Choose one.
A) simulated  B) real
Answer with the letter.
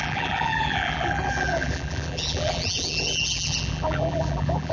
A